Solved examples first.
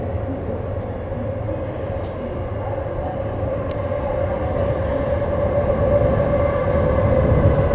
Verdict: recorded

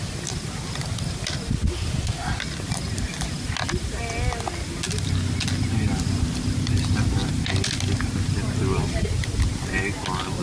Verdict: recorded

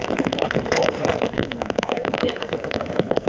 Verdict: remade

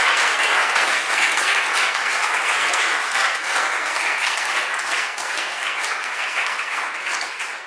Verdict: remade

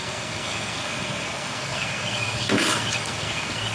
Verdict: remade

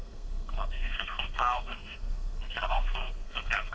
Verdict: remade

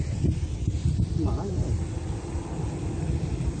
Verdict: recorded